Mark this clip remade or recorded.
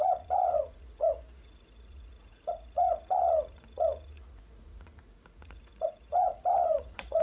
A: remade